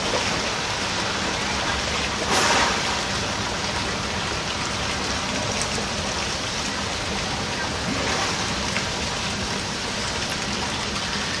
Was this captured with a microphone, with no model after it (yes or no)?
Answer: yes